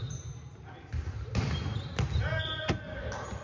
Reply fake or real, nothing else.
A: real